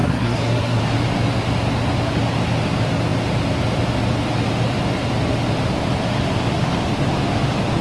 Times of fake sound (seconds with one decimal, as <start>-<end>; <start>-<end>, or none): 0.0-0.8